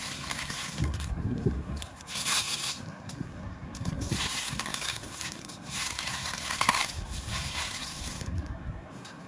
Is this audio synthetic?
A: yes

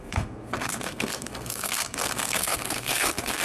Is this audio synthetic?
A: yes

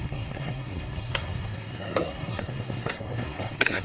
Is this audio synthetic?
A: yes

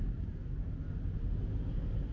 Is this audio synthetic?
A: no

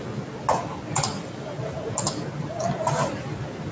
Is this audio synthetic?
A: no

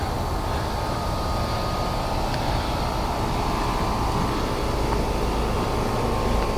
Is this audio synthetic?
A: no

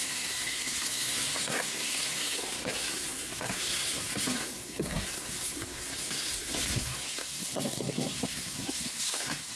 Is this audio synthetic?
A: yes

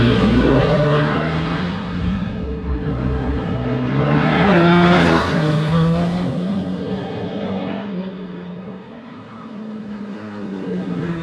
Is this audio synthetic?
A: yes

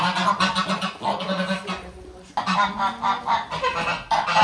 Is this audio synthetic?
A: no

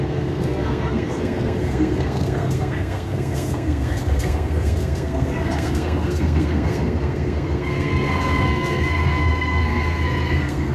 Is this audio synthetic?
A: yes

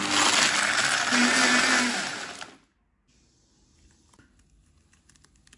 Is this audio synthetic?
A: no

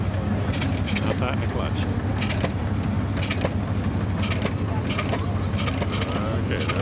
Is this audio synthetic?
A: no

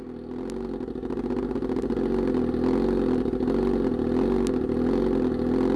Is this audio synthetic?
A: no